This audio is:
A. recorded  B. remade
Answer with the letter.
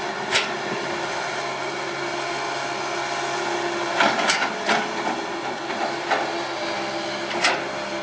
A